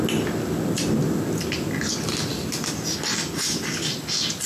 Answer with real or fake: real